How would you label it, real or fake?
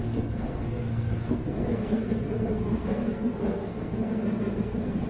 fake